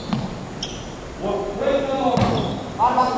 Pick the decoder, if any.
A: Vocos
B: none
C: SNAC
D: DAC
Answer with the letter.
B